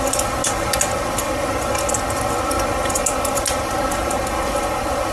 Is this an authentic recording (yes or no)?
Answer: yes